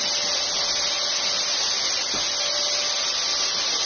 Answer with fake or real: real